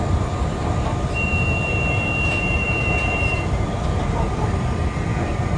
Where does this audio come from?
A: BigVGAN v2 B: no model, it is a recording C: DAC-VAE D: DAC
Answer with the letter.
A